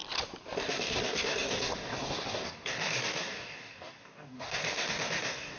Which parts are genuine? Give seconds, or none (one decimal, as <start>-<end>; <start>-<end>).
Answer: 0.0-0.7